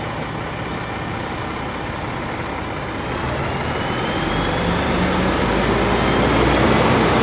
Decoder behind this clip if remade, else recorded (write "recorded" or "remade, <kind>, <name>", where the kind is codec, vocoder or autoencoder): recorded